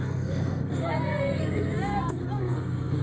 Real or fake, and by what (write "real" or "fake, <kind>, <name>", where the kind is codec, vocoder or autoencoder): fake, codec, SNAC